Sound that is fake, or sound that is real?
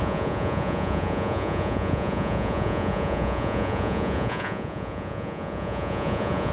fake